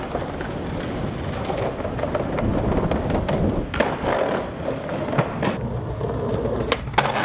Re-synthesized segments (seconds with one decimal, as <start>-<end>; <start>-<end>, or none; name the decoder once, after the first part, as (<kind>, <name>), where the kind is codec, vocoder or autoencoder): none